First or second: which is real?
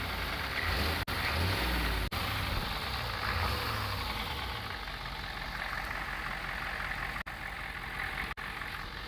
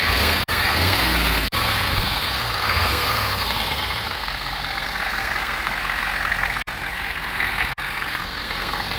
first